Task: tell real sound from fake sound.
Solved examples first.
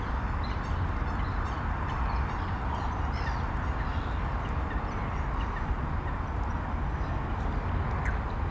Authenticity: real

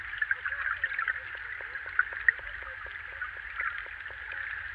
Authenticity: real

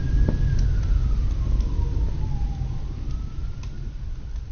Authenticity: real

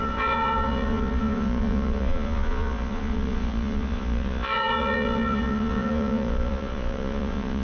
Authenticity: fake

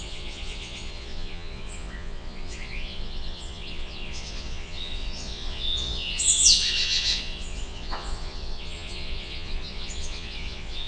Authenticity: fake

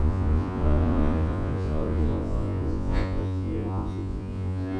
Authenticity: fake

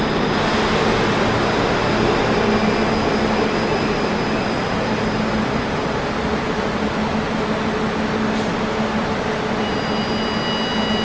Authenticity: real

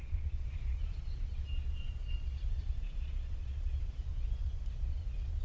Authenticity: fake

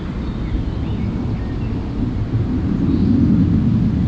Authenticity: real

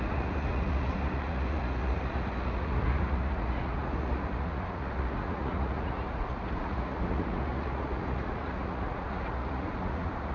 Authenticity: fake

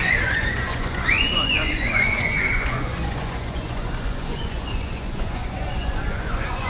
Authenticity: fake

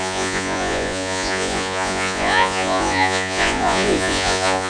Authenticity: fake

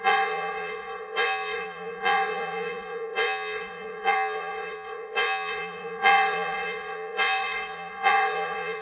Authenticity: fake